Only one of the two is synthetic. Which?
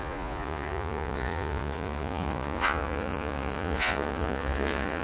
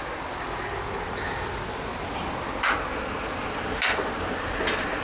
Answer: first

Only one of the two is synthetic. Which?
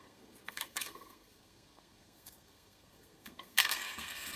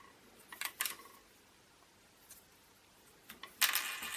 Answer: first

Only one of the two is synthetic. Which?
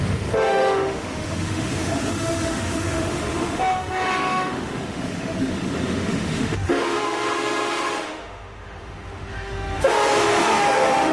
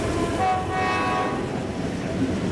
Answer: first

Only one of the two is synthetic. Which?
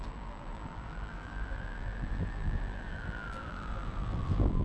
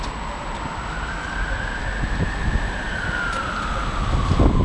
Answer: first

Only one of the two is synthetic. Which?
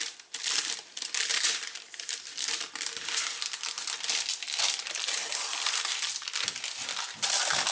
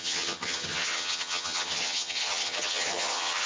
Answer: second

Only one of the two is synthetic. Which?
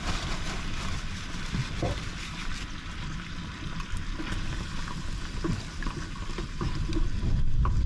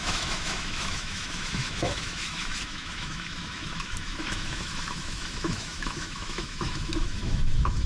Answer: second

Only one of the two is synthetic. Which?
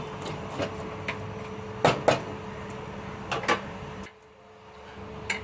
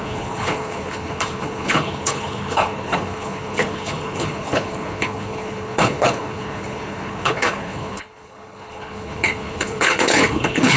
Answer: second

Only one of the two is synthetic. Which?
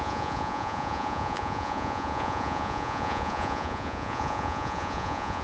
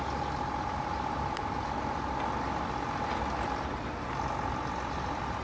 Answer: first